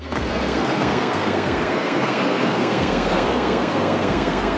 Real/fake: fake